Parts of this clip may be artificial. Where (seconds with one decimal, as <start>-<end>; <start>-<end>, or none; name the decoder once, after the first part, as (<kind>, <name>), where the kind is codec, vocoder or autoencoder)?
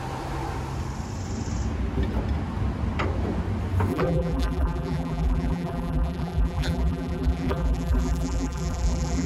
3.9-9.3 (vocoder, BigVGAN v2)